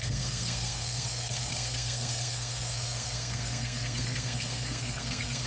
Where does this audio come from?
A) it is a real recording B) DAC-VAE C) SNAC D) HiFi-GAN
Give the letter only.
C